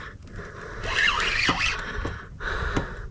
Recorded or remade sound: recorded